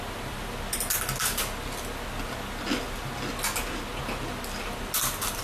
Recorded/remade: recorded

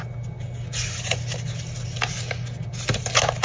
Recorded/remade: recorded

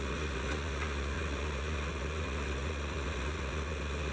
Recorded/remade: remade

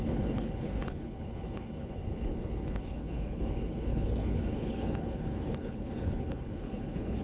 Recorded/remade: remade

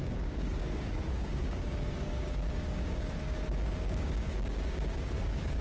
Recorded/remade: remade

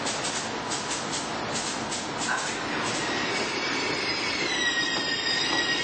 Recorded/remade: recorded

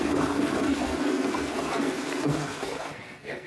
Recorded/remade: remade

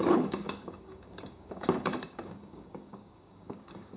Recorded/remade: remade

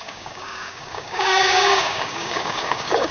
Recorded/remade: remade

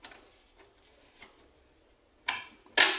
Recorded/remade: recorded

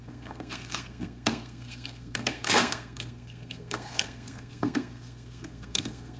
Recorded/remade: remade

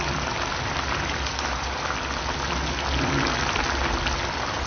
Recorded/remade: recorded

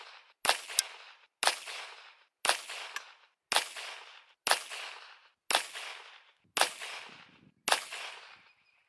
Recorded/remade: recorded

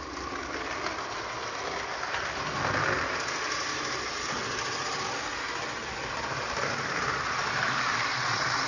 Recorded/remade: recorded